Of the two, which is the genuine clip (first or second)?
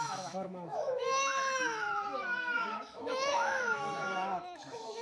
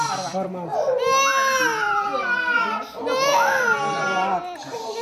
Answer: second